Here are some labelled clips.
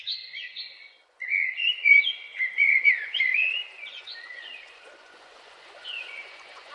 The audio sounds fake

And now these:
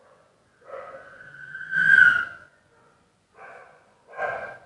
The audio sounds fake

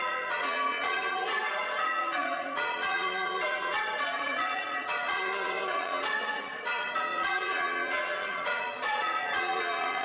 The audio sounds fake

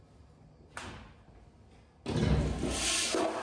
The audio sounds real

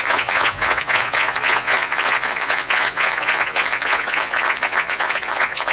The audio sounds fake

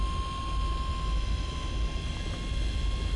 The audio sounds real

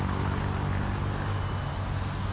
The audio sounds real